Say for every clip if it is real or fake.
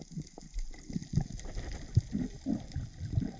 real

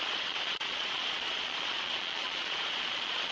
fake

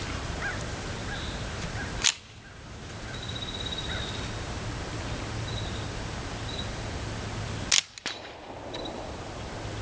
real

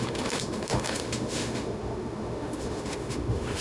fake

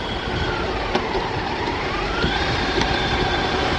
fake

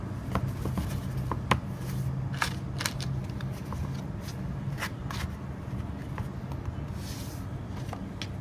real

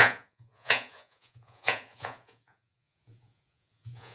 fake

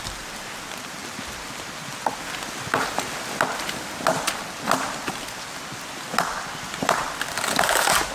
real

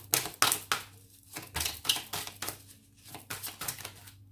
real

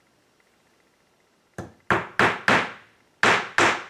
real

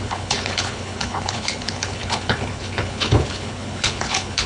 fake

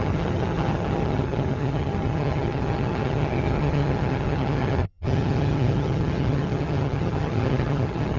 fake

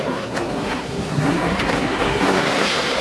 fake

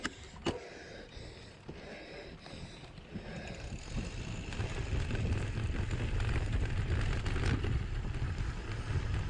real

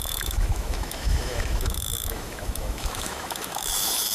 fake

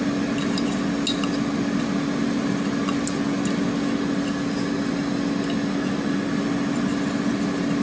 real